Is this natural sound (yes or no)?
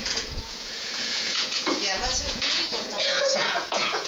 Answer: no